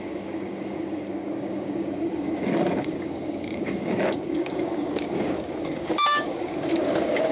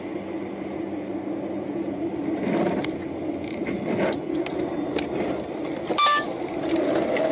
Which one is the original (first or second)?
second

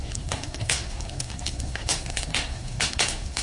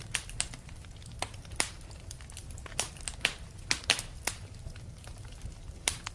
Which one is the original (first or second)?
second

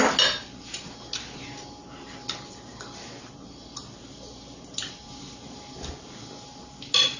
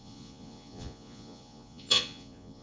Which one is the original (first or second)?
first